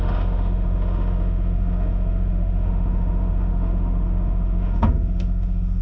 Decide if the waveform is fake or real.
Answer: fake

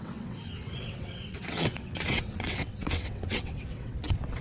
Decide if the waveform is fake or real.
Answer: fake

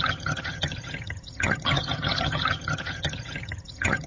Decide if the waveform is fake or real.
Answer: fake